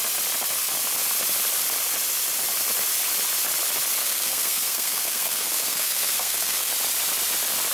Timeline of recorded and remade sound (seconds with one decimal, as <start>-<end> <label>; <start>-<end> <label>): 0.0-4.0 recorded; 4.0-6.7 remade; 6.7-7.7 recorded